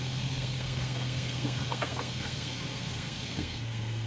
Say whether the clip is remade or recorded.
remade